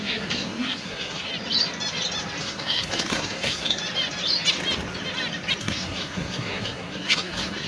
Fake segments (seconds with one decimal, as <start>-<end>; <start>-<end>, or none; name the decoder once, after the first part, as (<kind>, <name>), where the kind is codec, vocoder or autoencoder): 0.0-1.3 (codec, SNAC); 2.4-3.8; 5.6-7.7

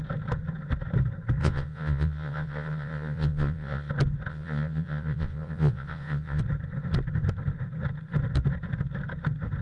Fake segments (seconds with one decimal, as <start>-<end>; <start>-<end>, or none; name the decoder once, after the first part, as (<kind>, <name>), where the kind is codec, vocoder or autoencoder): 1.4-3.9 (vocoder, Vocos); 4.3-6.4

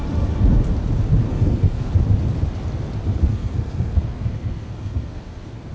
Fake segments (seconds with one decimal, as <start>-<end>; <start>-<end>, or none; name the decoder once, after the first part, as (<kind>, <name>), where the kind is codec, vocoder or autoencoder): 1.3-1.9 (codec, SNAC); 3.3-5.7

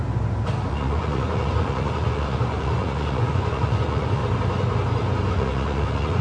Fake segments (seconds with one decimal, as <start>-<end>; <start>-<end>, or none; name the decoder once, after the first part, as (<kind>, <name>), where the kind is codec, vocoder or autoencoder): 0.7-4.2 (vocoder, Vocos); 5.3-6.2